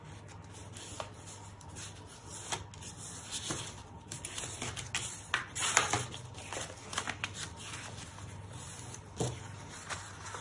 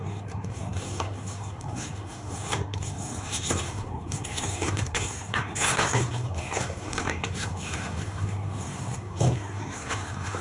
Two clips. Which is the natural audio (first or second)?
first